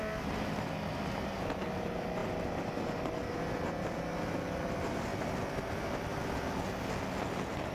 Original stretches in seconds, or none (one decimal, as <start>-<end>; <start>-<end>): 0.0-7.7